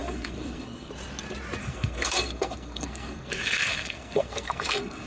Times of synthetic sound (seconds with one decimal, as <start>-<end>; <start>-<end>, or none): 0.0-0.9; 1.6-5.1